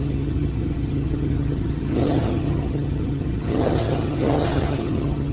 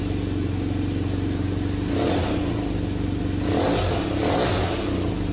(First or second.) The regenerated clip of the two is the first